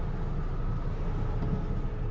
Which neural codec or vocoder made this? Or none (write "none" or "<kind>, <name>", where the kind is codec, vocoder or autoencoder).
none